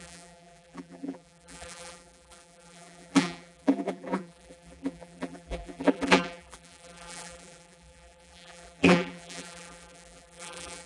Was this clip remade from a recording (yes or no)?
yes